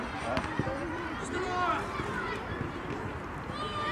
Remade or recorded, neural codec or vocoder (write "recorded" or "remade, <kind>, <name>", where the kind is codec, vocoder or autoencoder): recorded